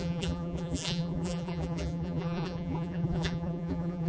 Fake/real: fake